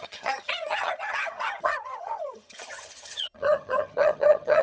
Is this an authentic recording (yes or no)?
no